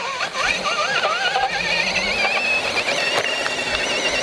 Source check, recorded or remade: recorded